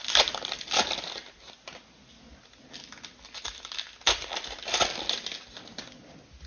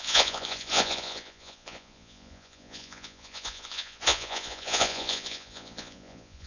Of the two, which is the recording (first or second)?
first